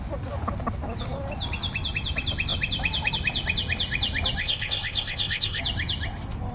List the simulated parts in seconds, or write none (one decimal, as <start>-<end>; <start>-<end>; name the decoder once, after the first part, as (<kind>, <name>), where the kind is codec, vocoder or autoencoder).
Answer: 4.4-5.6 (codec, ZipCodec)